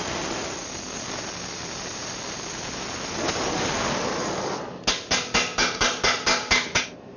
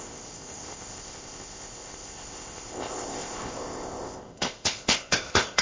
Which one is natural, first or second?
first